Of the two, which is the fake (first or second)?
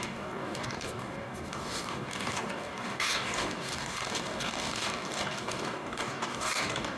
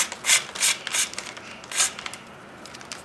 first